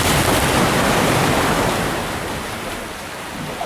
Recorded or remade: recorded